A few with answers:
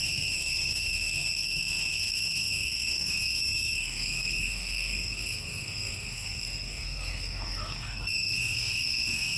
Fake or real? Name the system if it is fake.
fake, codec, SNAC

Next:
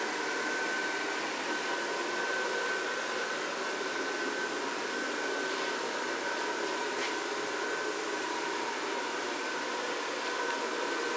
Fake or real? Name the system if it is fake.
real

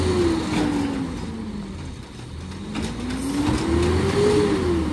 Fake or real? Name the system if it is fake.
real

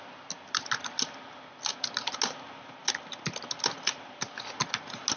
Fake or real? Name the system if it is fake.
real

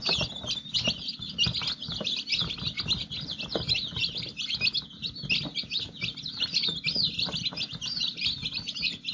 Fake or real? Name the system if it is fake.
real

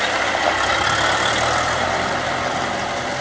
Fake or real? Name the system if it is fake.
real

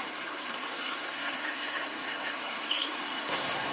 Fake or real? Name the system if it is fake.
fake, codec, SNAC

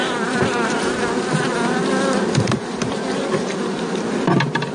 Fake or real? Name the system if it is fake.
real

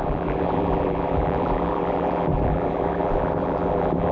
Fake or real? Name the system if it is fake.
fake, vocoder, BigVGAN v2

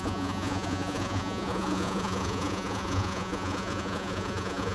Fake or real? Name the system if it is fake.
fake, vocoder, Vocos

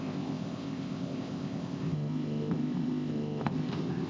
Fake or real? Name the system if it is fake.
fake, codec, ZipCodec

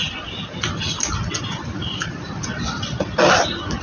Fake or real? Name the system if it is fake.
real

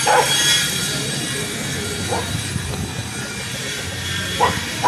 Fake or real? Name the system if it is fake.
fake, vocoder, BigVGAN v2